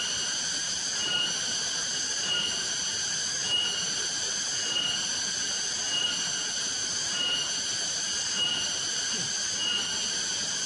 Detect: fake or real real